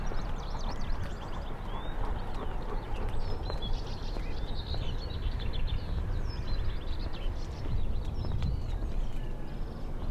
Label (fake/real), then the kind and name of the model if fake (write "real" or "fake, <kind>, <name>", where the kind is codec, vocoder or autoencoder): real